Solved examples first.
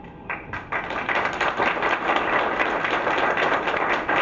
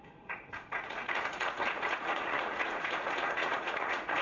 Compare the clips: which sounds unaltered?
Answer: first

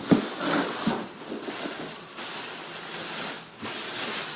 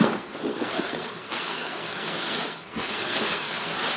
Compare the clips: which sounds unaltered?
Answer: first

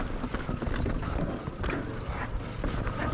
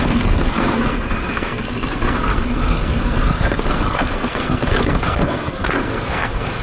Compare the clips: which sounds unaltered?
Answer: first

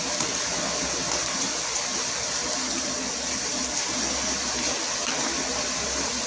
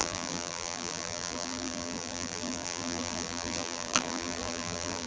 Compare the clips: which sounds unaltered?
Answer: first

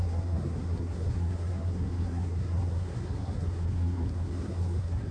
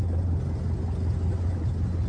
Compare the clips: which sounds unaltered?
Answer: second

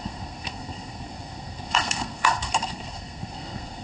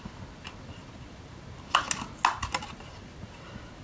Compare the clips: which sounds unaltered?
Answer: second